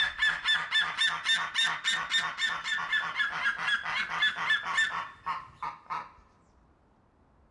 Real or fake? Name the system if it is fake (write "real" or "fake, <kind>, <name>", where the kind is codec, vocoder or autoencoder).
real